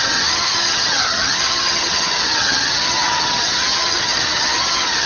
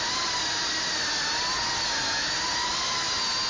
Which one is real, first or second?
second